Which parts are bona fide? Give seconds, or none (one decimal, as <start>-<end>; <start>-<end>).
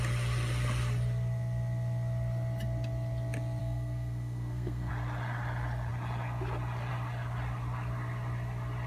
0.0-3.6; 4.9-8.9